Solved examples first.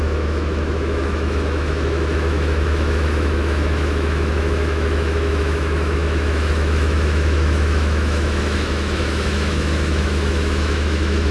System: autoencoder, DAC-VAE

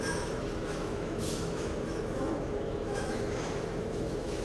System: autoencoder, DAC-VAE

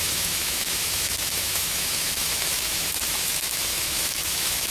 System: autoencoder, DAC-VAE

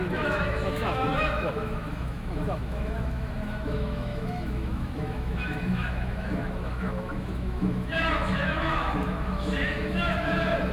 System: autoencoder, DAC-VAE